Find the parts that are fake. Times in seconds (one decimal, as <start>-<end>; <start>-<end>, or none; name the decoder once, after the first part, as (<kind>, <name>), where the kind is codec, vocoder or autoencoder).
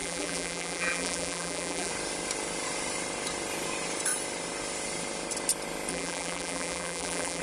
0.0-1.9 (vocoder, BigVGAN v2); 5.9-7.4